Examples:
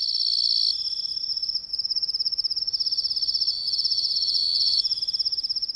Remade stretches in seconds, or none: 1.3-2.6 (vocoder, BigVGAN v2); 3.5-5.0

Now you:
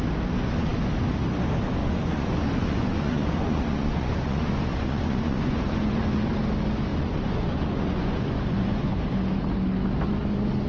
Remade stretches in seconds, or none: 1.8-6.2 (vocoder, Vocos); 6.9-9.0

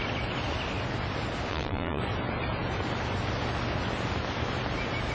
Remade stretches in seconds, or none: 1.5-2.0 (vocoder, Vocos)

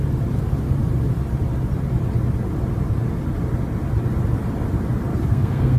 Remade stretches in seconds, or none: 5.1-5.8 (codec, SNAC)